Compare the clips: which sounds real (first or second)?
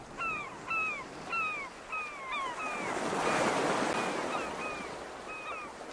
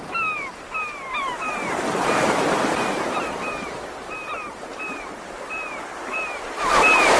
first